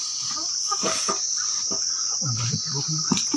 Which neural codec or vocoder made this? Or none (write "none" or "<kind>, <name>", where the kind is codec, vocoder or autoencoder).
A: none